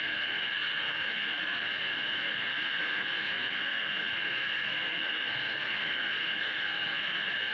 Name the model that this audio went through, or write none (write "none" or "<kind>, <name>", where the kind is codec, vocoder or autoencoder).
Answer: codec, SNAC